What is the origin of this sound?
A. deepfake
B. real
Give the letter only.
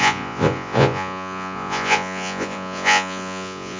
A